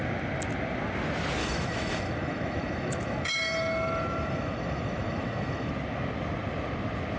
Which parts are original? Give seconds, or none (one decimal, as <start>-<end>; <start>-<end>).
0.0-1.4; 5.7-7.2